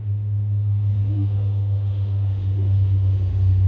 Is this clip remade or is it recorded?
remade